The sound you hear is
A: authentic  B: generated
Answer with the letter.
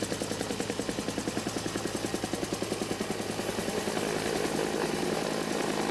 A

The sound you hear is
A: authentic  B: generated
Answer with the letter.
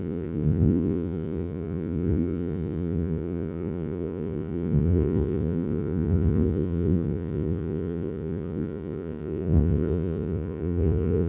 B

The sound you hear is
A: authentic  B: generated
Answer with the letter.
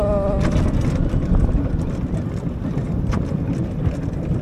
A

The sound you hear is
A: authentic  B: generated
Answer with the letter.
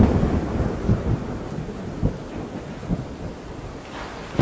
A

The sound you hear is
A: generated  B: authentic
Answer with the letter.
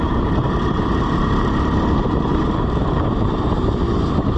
A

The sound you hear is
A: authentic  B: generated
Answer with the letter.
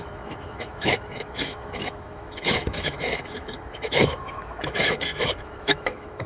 B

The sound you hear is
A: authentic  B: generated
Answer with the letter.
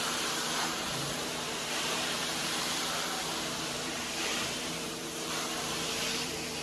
B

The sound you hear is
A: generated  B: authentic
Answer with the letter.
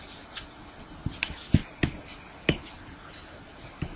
B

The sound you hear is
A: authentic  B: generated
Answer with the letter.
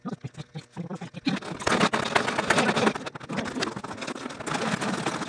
A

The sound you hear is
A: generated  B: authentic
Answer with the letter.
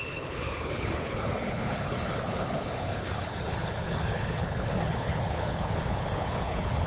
A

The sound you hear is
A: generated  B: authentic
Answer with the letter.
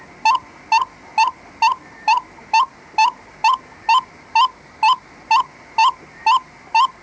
B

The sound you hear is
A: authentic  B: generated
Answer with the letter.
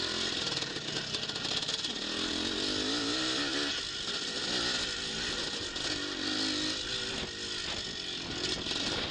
A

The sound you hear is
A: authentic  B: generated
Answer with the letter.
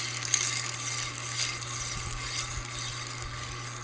A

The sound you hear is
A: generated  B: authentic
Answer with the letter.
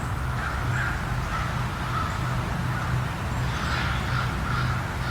B